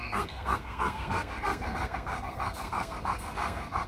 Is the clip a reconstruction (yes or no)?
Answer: yes